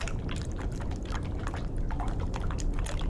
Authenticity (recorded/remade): recorded